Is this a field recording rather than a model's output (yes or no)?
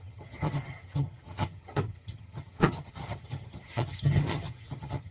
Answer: no